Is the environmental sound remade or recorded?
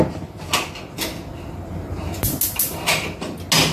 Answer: recorded